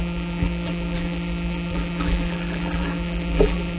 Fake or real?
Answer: fake